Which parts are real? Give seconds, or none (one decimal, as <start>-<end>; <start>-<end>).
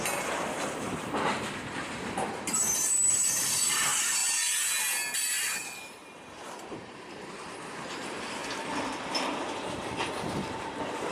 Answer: 4.2-5.8; 8.4-10.3